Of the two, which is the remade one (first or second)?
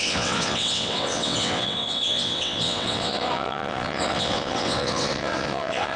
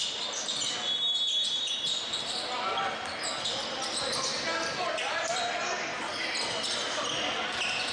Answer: first